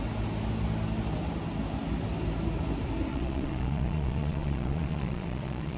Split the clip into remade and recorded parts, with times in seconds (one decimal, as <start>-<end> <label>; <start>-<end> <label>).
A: 0.0-3.1 recorded; 3.1-5.8 remade